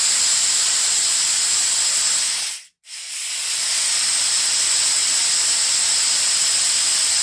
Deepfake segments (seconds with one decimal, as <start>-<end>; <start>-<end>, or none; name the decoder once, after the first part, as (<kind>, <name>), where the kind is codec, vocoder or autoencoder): none